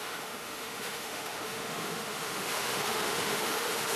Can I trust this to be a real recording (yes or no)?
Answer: no